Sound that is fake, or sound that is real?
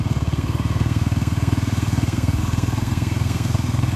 fake